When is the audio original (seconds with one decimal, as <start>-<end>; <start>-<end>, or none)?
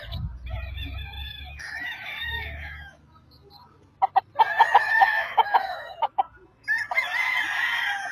0.0-1.2; 3.0-4.8; 6.2-8.1